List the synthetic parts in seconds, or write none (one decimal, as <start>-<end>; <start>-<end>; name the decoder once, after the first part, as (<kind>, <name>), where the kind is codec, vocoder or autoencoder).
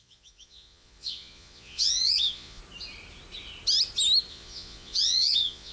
0.0-2.6 (vocoder, Vocos); 4.3-5.7